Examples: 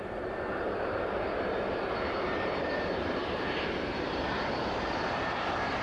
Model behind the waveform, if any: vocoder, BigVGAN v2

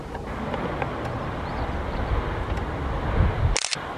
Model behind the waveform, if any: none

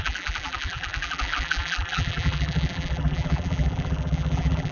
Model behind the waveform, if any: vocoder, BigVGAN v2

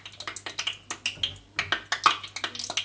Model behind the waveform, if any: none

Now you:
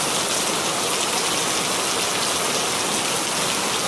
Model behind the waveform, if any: none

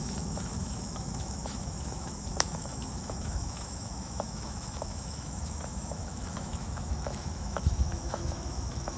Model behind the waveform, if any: autoencoder, DAC-VAE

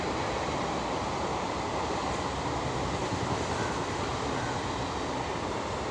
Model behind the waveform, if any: none